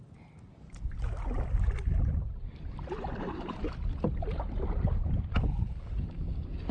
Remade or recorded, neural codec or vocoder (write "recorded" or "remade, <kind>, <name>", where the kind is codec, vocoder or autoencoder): recorded